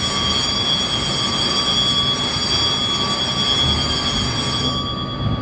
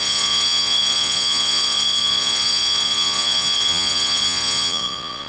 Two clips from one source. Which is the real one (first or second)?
first